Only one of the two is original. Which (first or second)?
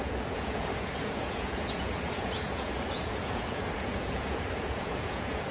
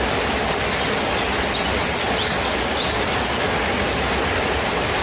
second